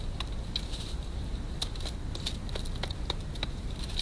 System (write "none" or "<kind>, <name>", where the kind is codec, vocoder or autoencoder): none